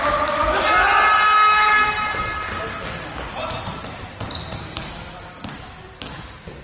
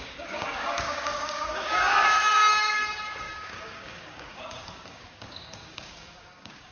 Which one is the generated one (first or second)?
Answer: second